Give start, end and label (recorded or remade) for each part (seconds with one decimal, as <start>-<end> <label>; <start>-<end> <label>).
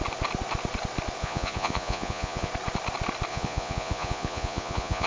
0.0-1.2 recorded; 1.2-2.5 remade; 2.5-3.3 recorded; 3.3-5.1 remade